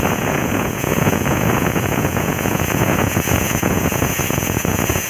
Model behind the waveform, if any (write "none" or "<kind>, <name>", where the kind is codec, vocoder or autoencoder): vocoder, Vocos